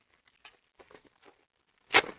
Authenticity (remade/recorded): recorded